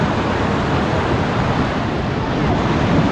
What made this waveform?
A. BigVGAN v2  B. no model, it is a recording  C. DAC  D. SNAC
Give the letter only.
B